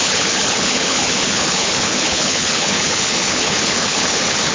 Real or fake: fake